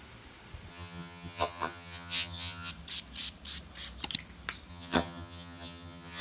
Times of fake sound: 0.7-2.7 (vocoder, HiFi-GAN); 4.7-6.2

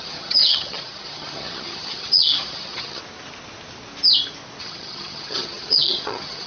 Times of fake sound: 0.0-3.0 (vocoder, HiFi-GAN); 4.6-6.5